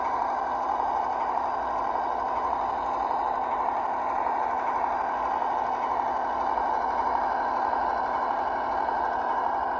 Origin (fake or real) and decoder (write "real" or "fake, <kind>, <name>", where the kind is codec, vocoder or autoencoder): real